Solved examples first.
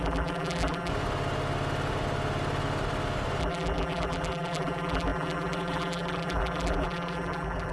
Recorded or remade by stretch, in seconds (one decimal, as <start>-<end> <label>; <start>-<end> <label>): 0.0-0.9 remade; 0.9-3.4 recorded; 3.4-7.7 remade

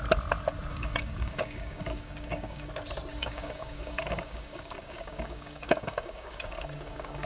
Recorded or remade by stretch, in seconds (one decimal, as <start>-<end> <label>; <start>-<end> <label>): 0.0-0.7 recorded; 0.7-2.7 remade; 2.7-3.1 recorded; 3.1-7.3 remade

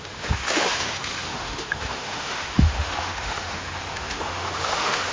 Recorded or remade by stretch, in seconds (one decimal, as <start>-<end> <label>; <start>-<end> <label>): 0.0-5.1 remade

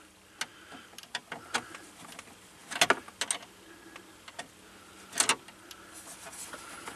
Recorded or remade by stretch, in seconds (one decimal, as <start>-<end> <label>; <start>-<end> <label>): 0.0-7.0 recorded

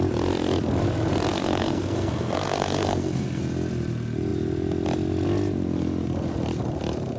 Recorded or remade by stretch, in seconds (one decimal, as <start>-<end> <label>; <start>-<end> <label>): 0.0-1.3 recorded; 1.3-3.4 remade; 3.4-7.2 recorded